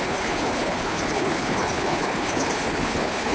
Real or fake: fake